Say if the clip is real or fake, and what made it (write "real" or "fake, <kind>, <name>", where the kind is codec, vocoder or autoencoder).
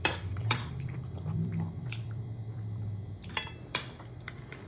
fake, vocoder, BigVGAN v2